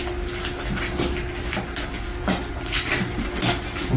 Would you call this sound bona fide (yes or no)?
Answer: yes